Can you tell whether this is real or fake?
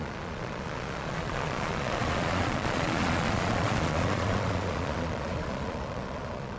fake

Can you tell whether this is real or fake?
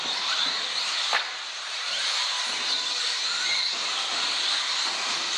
real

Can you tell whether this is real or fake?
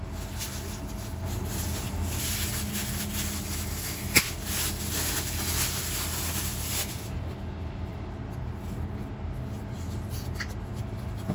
real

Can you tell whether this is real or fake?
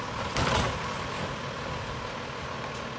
real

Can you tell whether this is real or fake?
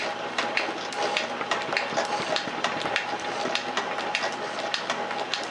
real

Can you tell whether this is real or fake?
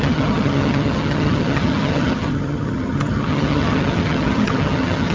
fake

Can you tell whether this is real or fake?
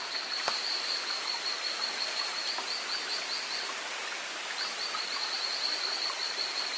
real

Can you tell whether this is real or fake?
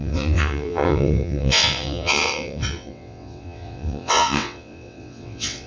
fake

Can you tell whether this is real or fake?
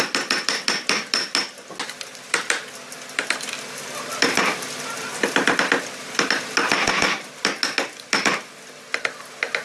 real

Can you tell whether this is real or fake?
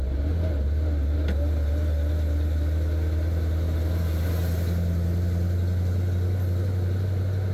real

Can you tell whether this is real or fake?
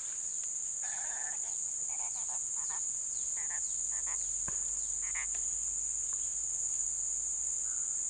real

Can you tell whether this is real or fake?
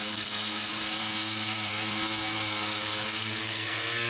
fake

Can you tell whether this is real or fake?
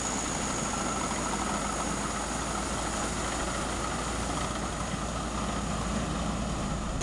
real